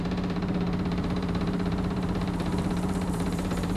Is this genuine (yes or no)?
no